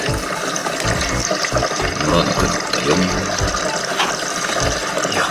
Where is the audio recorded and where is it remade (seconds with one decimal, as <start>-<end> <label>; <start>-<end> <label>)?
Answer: 0.0-5.3 recorded